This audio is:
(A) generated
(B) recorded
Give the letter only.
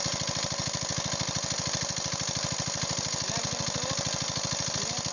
B